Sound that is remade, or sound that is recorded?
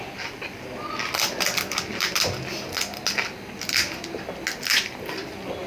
recorded